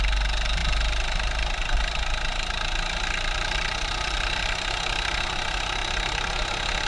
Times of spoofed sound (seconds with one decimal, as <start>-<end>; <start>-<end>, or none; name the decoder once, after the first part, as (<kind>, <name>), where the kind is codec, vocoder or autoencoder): none